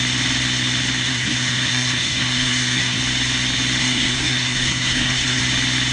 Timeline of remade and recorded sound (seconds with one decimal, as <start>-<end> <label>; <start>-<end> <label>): 0.0-1.0 recorded; 1.0-3.0 remade; 3.0-3.8 recorded; 3.8-5.4 remade; 5.4-5.9 recorded

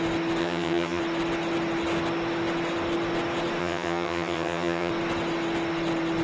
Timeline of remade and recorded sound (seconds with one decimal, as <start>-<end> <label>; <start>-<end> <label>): 0.0-0.4 recorded; 0.4-1.0 remade; 1.0-3.6 recorded; 3.6-4.9 remade; 4.9-6.2 recorded